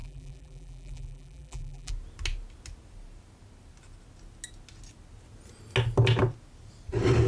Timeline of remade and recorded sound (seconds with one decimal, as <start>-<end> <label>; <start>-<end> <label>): 0.0-1.9 remade; 1.9-7.3 recorded